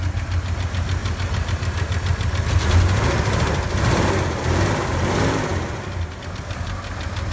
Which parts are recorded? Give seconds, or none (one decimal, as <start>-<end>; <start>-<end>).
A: 0.0-7.3